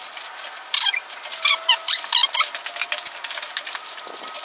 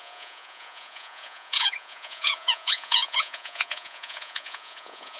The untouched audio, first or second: first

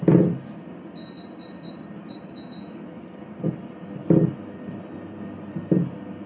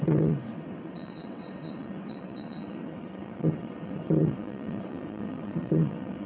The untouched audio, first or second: first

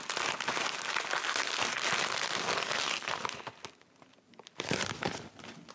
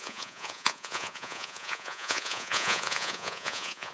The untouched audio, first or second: first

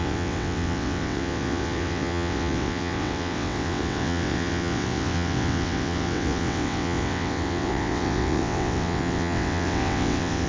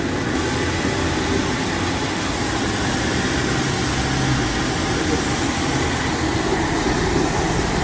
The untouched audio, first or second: second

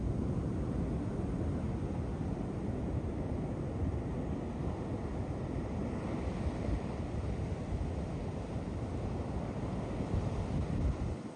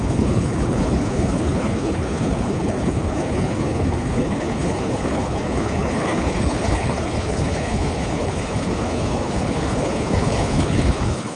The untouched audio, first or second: first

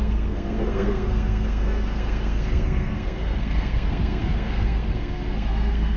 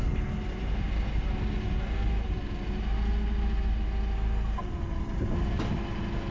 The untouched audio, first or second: second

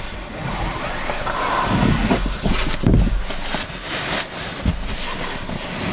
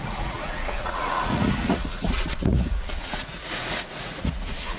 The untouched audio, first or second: first